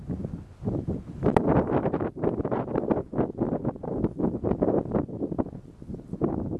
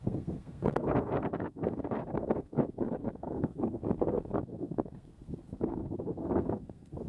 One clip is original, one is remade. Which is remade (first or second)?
second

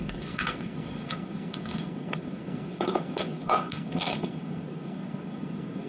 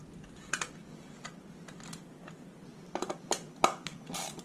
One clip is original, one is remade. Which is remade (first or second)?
first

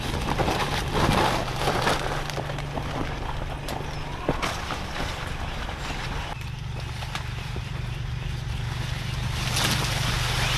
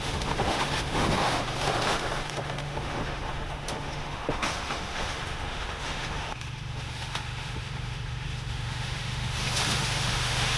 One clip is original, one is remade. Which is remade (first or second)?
second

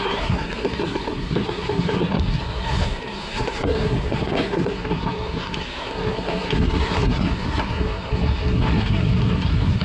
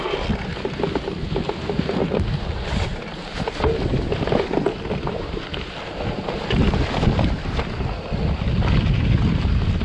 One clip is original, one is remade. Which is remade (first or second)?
first